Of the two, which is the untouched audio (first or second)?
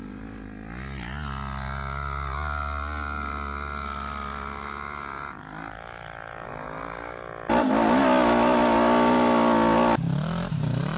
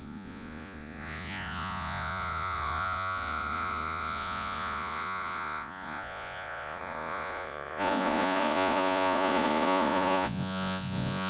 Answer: first